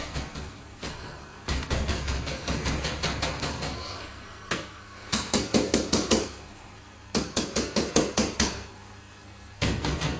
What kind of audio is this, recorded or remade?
remade